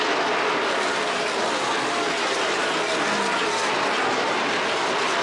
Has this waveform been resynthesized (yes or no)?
no